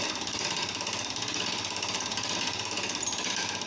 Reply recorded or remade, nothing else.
recorded